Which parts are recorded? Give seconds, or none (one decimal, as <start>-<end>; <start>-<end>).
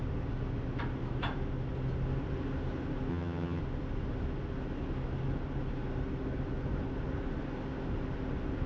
0.0-3.1; 3.6-8.7